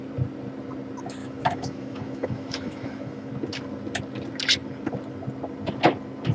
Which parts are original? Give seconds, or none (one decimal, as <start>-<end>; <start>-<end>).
0.0-1.2; 3.3-6.3